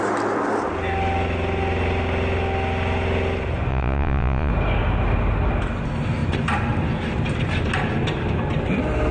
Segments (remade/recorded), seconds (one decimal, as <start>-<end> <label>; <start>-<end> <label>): 0.0-3.7 recorded; 3.7-4.5 remade; 4.5-9.1 recorded